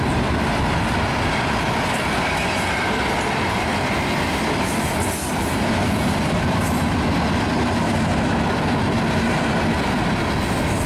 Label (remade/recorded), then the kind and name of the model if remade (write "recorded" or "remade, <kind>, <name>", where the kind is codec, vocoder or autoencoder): recorded